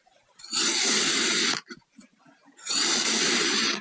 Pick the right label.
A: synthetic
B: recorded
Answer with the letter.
B